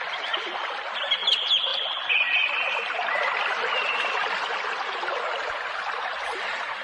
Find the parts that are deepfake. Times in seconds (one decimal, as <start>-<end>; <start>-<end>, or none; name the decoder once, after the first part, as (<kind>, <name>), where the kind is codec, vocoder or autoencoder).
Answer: none